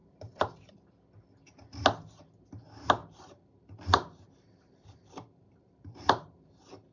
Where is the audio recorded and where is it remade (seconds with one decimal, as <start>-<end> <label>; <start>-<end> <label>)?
0.0-0.7 remade; 0.7-3.0 recorded; 3.0-6.9 remade